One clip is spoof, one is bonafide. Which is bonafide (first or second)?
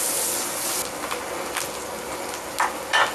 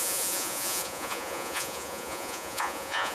first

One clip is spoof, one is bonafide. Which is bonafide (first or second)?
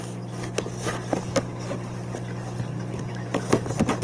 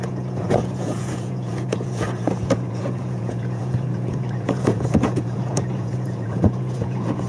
first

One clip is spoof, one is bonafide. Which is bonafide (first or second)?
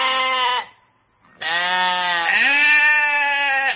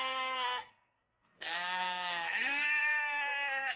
first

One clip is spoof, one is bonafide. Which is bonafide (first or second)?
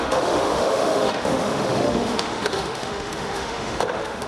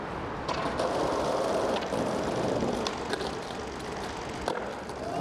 second